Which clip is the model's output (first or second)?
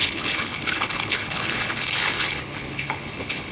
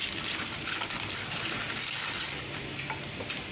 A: first